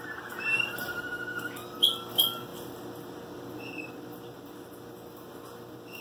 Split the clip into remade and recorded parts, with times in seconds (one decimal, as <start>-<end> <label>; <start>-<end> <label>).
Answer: 0.0-6.0 recorded